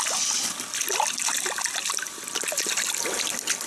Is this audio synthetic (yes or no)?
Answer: no